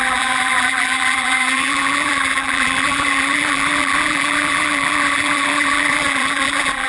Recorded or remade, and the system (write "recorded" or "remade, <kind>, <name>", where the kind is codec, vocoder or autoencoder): remade, vocoder, BigVGAN v2